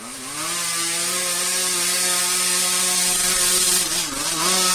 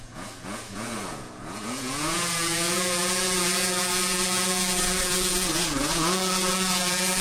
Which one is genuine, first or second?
first